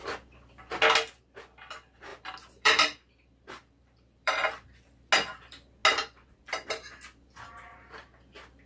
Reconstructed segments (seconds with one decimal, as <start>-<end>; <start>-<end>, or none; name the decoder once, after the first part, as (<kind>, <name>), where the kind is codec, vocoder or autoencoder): 2.1-5.1 (vocoder, BigVGAN v2)